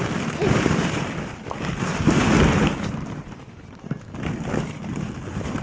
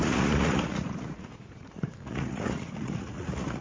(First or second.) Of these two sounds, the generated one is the second